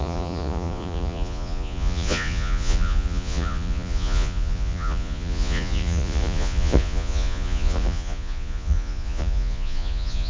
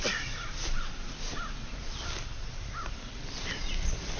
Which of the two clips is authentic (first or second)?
second